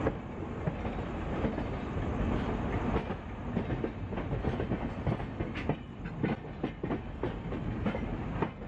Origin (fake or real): real